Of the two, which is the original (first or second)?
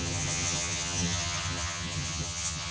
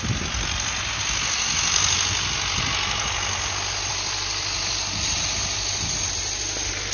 second